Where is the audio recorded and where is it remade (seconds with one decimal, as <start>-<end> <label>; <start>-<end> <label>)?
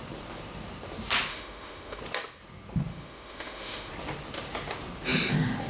0.0-1.3 recorded; 1.3-2.0 remade; 2.0-2.9 recorded; 2.9-3.9 remade; 3.9-5.7 recorded